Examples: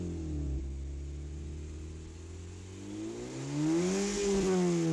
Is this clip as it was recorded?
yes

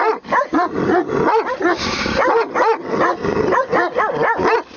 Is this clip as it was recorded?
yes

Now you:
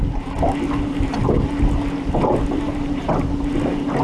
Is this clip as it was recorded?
yes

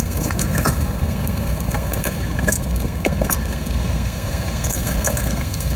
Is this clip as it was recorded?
no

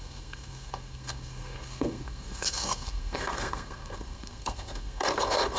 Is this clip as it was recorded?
no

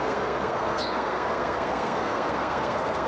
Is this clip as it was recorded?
no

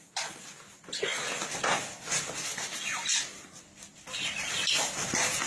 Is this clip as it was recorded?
yes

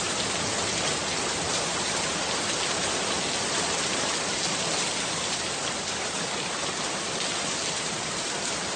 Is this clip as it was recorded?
yes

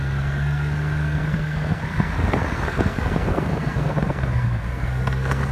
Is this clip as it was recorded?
no